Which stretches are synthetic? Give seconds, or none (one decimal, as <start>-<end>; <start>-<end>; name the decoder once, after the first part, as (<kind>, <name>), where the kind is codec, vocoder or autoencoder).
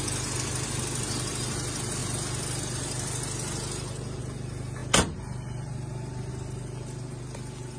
none